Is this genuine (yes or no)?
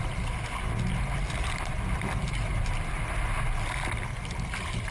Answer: yes